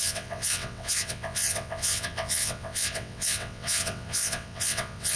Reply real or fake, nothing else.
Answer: fake